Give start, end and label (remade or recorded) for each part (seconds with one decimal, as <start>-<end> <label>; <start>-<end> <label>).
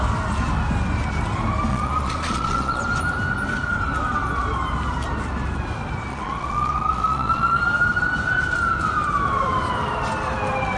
0.0-1.7 recorded; 1.7-2.8 remade; 2.8-6.1 recorded; 6.1-7.6 remade; 7.6-10.8 recorded